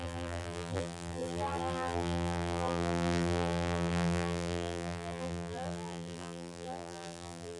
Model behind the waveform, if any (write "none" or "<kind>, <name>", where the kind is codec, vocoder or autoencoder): vocoder, BigVGAN v2